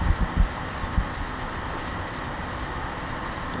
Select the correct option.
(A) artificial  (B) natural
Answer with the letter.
B